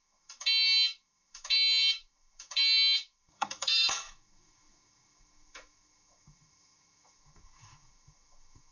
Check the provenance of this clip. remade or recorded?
remade